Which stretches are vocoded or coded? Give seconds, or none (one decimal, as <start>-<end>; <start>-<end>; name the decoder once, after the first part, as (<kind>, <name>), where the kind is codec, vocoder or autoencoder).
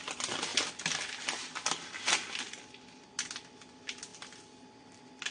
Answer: none